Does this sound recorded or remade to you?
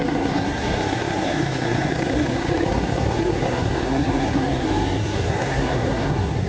remade